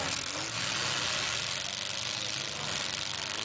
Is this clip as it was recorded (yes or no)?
yes